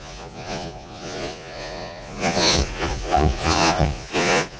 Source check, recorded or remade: remade